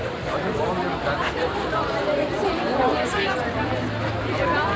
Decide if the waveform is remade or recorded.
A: recorded